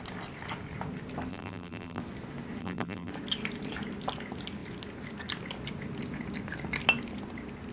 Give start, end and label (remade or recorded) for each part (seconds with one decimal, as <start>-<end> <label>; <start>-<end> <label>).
0.0-1.3 recorded; 1.3-2.0 remade; 2.0-2.6 recorded; 2.6-3.1 remade; 3.1-7.7 recorded